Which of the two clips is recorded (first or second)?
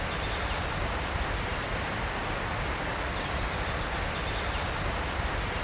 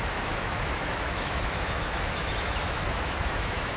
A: first